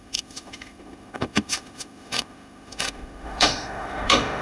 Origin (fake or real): fake